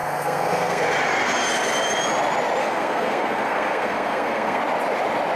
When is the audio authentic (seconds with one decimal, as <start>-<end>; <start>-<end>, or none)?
0.8-2.6; 4.6-5.4